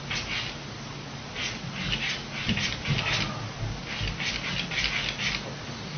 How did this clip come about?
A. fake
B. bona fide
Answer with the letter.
B